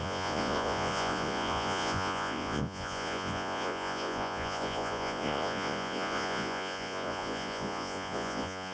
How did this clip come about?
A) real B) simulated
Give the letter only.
B